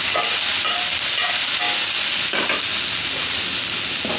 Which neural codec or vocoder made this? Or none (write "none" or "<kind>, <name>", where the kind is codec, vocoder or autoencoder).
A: none